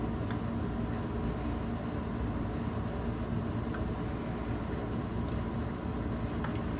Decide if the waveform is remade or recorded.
recorded